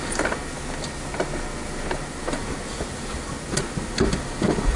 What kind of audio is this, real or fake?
real